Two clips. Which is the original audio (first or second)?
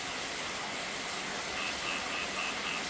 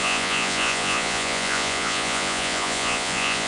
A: first